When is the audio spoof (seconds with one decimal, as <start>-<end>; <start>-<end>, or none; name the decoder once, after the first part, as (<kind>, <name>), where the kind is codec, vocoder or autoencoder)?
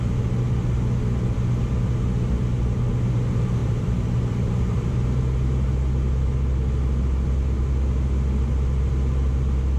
3.6-5.2 (vocoder, BigVGAN v2)